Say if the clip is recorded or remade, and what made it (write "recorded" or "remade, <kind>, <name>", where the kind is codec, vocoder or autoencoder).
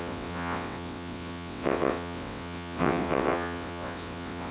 remade, vocoder, WaveNeXt